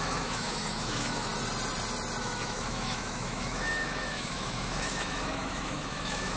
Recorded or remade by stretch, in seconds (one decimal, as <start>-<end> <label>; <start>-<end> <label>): 0.0-1.3 remade; 1.3-2.2 recorded; 2.2-6.4 remade